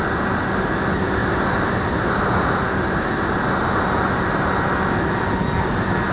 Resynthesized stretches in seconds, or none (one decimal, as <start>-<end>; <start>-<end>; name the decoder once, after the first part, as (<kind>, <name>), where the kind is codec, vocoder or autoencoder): 1.2-3.2 (vocoder, BigVGAN v2)